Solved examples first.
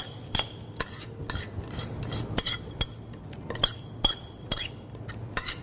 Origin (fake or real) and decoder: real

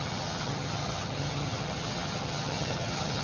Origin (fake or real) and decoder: fake, vocoder, HiFi-GAN